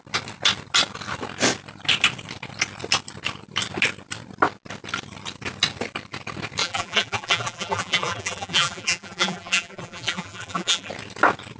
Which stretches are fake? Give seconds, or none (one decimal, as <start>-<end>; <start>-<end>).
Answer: 6.6-10.9